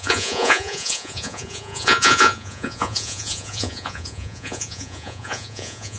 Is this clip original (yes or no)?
no